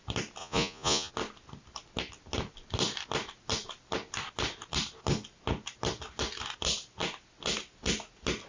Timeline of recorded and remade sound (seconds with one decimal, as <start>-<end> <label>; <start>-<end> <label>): 0.0-0.4 recorded; 0.4-1.1 remade; 1.1-8.5 recorded